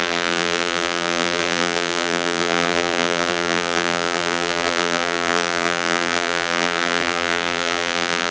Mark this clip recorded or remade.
remade